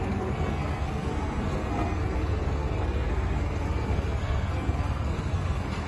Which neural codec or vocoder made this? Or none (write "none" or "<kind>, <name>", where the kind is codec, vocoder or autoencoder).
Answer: codec, SNAC